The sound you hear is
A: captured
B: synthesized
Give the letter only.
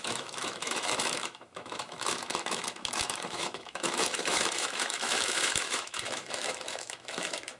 B